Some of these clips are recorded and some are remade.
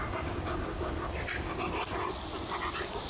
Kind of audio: recorded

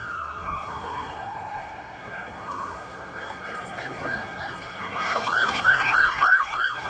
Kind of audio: remade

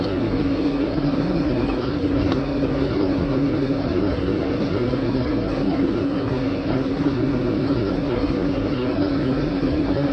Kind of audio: remade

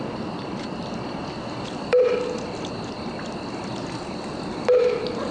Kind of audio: recorded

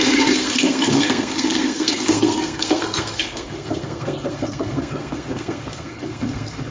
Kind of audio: remade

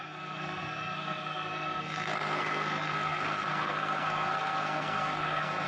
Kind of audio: remade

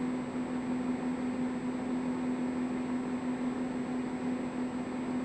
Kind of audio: recorded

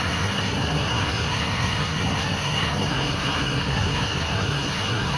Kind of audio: remade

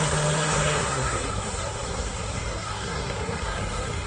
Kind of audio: remade